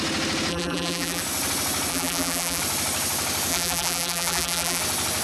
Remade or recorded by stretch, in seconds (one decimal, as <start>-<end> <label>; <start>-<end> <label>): 0.0-0.5 recorded; 0.5-1.2 remade; 1.2-1.9 recorded; 1.9-2.6 remade; 2.6-3.5 recorded; 3.5-4.8 remade; 4.8-5.2 recorded